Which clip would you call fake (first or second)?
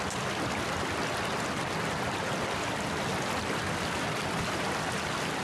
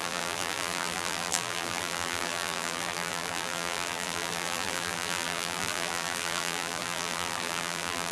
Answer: second